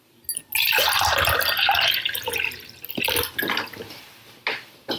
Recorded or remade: recorded